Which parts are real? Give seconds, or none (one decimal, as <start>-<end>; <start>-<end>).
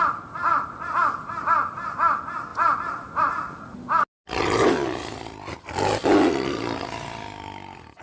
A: 0.0-8.0